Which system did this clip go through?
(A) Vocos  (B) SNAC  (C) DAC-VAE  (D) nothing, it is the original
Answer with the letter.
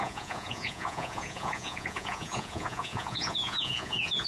A